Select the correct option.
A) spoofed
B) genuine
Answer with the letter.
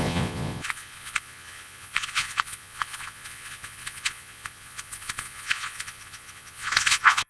A